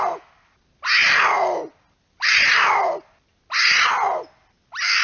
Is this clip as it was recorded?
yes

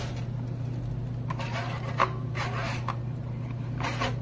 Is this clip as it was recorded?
yes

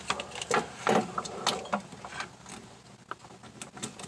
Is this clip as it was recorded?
yes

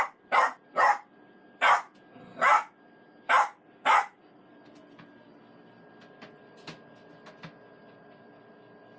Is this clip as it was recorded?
yes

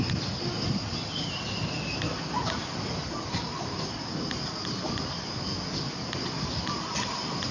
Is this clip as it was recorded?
yes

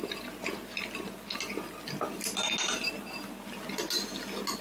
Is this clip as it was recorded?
yes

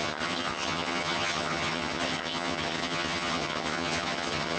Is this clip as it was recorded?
no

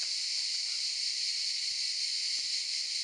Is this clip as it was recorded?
yes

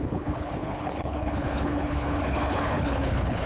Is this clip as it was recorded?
no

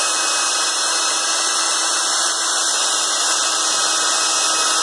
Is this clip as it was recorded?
yes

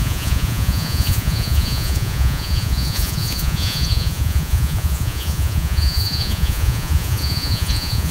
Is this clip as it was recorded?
no